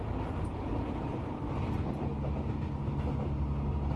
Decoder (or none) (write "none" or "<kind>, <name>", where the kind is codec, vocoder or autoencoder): none